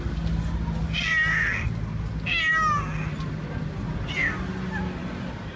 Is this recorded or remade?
recorded